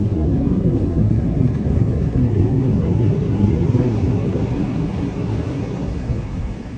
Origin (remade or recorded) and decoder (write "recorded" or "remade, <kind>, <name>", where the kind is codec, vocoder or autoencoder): remade, codec, SNAC